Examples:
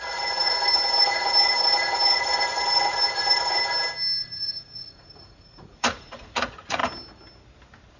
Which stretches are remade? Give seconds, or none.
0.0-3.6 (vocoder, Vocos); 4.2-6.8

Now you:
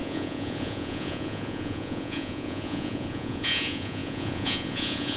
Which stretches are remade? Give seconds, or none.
0.0-5.2 (vocoder, Vocos)

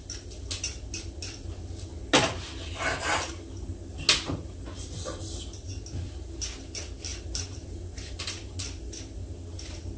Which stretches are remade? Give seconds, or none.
7.1-8.2 (vocoder, BigVGAN v2)

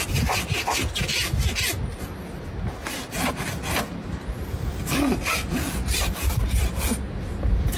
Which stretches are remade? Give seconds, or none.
none

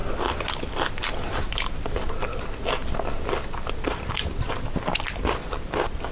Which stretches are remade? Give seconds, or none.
none

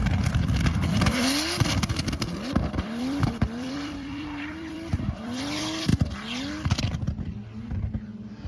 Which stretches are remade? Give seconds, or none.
2.7-5.9 (vocoder, BigVGAN v2); 8.0-8.5